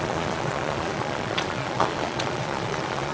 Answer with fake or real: fake